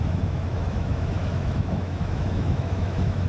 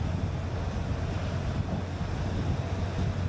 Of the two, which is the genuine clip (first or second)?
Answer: second